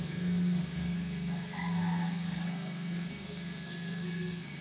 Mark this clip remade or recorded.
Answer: remade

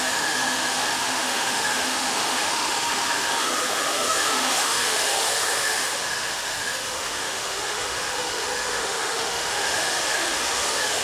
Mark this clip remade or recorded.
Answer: remade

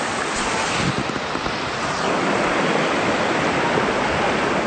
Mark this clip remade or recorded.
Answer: recorded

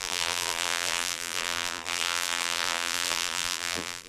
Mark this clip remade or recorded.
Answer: remade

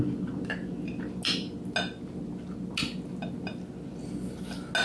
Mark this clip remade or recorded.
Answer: recorded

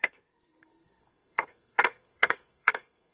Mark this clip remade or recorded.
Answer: remade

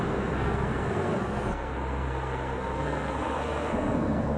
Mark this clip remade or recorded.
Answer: remade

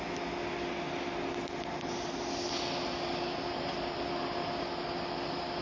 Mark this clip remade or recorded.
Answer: recorded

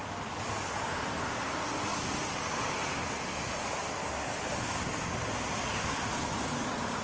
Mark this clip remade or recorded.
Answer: recorded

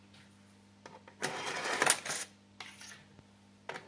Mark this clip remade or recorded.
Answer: recorded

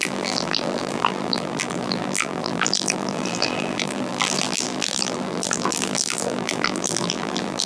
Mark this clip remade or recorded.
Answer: remade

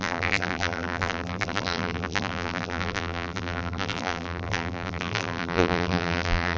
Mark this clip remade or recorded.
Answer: remade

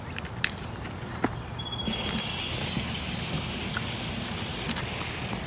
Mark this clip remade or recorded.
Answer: recorded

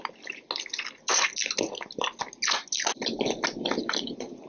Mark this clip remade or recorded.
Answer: recorded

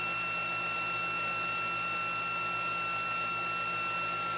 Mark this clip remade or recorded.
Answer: recorded